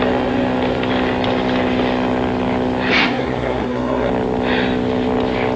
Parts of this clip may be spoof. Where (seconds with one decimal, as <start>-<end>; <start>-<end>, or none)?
3.0-4.1